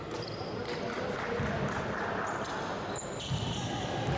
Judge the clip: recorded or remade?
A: recorded